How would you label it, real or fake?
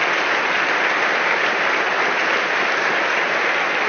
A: real